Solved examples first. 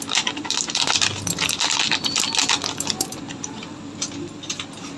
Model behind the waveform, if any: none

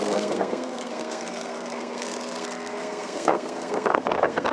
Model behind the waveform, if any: codec, SNAC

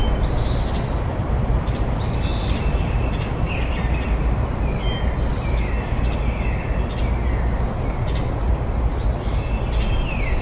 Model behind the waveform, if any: none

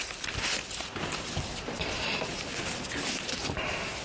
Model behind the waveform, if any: none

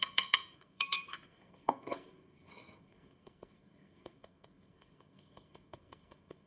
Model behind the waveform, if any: codec, SNAC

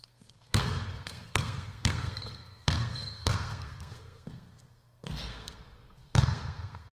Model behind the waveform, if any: codec, SNAC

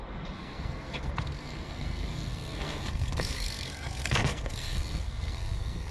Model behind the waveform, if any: codec, SNAC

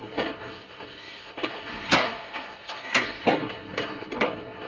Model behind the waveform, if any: codec, SNAC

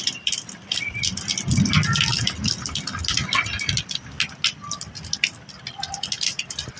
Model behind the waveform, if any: none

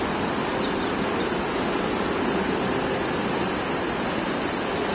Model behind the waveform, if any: none